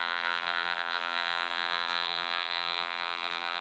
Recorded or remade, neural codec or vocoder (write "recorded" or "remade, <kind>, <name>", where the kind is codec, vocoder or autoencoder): remade, vocoder, BigVGAN v2